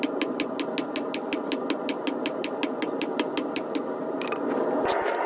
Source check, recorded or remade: recorded